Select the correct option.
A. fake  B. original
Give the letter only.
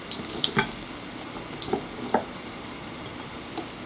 B